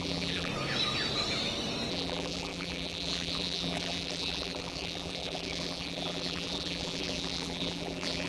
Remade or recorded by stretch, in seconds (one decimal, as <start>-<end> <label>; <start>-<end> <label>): 0.0-0.5 remade; 0.5-1.9 recorded; 1.9-8.3 remade